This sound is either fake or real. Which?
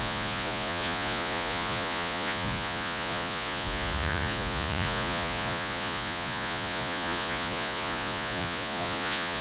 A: fake